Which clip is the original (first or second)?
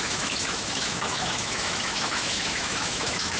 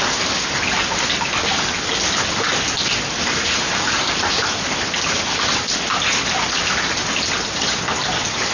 second